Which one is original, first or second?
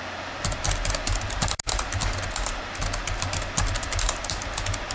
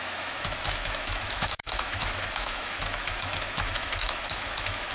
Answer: first